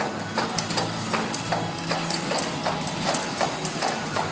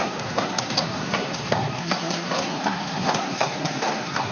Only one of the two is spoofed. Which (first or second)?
second